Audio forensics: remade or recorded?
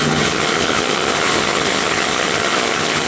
remade